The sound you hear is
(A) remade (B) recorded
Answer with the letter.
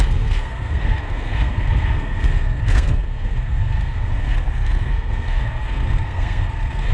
A